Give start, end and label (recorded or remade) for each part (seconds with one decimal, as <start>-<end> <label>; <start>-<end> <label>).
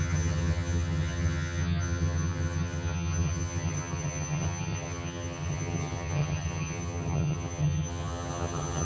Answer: 0.0-8.8 remade